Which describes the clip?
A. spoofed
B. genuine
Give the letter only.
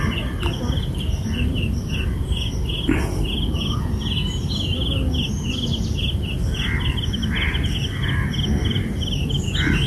B